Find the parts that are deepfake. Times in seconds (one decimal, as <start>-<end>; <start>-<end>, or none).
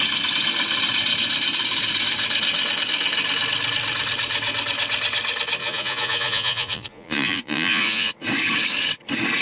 5.6-8.1